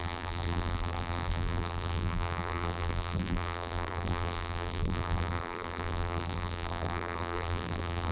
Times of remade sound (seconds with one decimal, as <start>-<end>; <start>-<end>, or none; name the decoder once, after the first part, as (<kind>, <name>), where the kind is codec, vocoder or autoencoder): 0.0-8.1 (vocoder, BigVGAN v2)